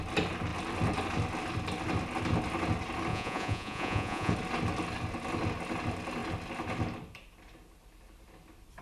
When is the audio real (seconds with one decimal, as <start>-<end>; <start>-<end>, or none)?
0.0-3.1; 4.3-8.8